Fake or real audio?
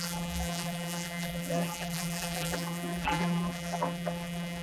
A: fake